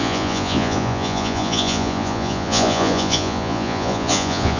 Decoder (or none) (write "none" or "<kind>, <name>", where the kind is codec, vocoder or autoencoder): vocoder, Vocos